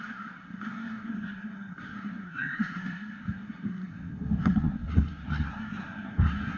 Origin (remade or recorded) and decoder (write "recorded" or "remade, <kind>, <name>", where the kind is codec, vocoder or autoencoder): remade, codec, SNAC